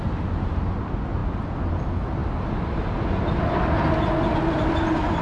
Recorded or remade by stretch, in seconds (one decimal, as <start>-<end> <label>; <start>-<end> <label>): 0.0-5.2 recorded